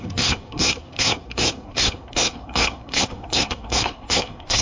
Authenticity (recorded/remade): remade